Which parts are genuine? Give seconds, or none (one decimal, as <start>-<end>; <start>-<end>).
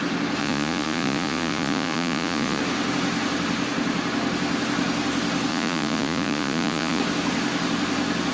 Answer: 0.0-0.4; 2.6-5.5; 7.0-8.3